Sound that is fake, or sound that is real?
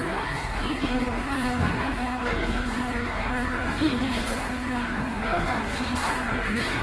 fake